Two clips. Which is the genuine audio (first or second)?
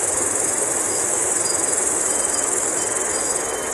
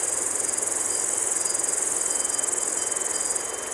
second